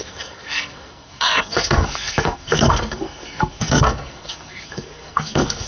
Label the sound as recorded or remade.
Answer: remade